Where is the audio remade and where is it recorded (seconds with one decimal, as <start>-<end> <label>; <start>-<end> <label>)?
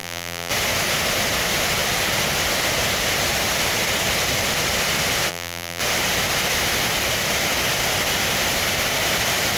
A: 0.0-0.5 remade; 0.5-5.3 recorded; 5.3-5.8 remade; 5.8-9.6 recorded